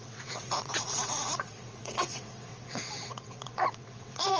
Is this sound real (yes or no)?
no